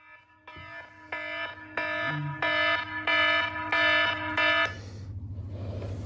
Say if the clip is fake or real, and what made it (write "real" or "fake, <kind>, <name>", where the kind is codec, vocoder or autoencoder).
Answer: real